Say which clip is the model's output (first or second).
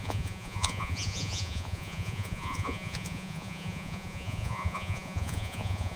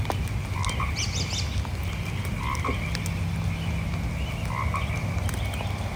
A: first